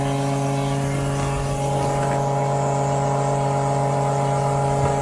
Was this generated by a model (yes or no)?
no